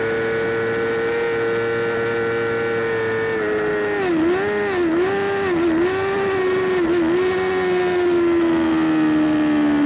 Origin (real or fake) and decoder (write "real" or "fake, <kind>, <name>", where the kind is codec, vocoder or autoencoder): real